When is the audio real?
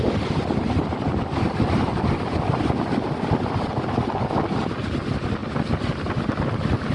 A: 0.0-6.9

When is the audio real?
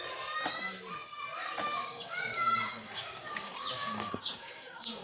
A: 0.0-1.7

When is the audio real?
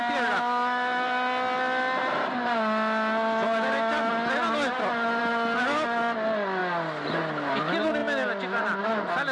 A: 0.0-9.3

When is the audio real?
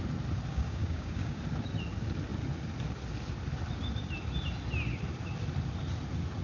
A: 0.0-0.5; 1.4-6.4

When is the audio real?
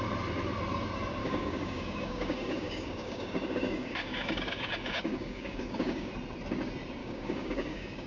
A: 0.0-1.2; 6.1-7.0